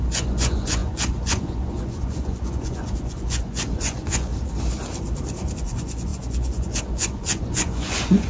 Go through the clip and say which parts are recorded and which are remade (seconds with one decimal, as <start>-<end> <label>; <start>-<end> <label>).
0.0-4.3 remade; 4.3-5.6 recorded; 5.6-8.3 remade